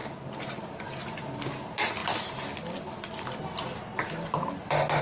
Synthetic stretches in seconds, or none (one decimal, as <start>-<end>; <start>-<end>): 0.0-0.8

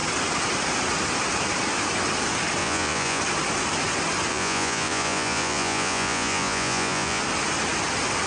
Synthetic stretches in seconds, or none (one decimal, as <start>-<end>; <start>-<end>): 2.6-3.2; 4.3-7.2

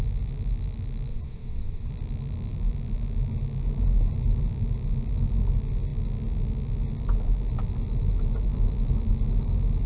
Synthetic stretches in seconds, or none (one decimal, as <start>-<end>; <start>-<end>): 1.1-1.9

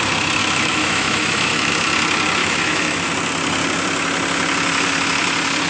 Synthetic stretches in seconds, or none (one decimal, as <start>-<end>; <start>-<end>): 0.4-1.7; 2.4-3.1